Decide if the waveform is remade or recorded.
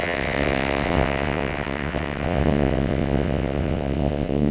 remade